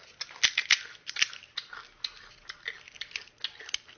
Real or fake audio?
real